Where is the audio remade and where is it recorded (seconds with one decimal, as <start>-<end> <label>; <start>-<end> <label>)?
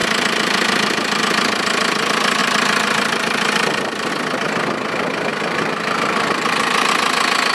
0.0-1.2 remade; 1.2-2.4 recorded; 2.4-4.1 remade; 4.1-5.3 recorded; 5.3-6.9 remade; 6.9-7.5 recorded